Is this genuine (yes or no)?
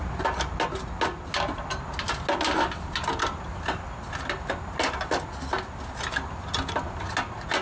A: yes